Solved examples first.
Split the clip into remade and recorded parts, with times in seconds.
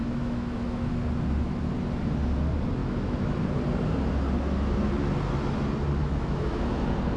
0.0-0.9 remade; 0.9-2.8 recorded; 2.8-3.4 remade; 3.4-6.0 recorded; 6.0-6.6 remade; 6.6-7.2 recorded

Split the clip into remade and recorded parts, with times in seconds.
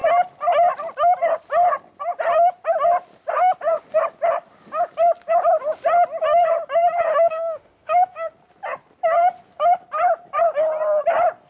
0.0-7.1 recorded; 7.1-8.3 remade; 8.3-11.5 recorded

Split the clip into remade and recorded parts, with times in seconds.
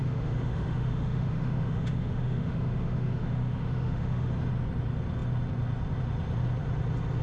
0.0-4.3 remade; 4.3-7.2 recorded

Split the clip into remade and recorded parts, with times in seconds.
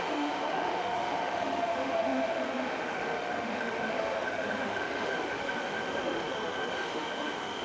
0.0-7.6 remade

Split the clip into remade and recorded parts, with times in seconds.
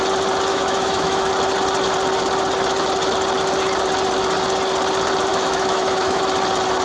0.0-0.5 recorded; 0.5-1.3 remade; 1.3-5.3 recorded; 5.3-6.2 remade; 6.2-6.8 recorded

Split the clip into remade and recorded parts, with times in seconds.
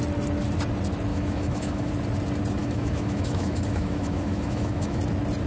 0.0-1.1 recorded; 1.1-1.9 remade; 1.9-2.6 recorded; 2.6-5.0 remade; 5.0-5.5 recorded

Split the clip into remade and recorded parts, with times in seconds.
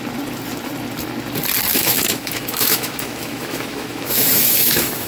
0.0-1.7 recorded; 1.7-5.1 remade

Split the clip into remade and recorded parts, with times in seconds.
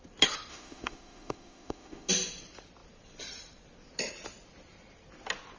0.0-0.5 recorded; 0.5-2.1 remade; 2.1-5.6 recorded